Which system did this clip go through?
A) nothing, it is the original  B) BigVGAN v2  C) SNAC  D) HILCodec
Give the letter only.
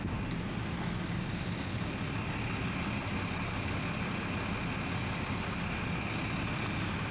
A